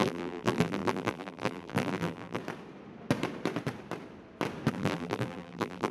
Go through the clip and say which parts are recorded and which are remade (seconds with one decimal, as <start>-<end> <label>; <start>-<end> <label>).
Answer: 0.0-2.4 remade; 2.4-4.7 recorded; 4.7-5.9 remade